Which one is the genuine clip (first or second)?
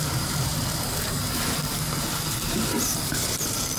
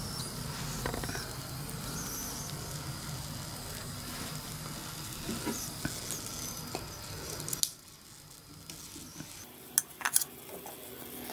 second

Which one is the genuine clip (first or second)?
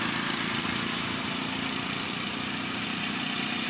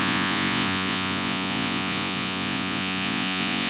first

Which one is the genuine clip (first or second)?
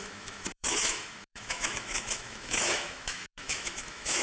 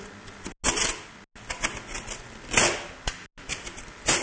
second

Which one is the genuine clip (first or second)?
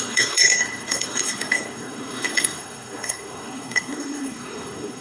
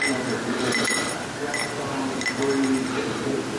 second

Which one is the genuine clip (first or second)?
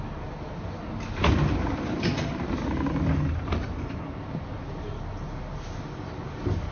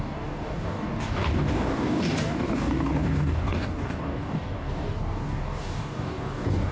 first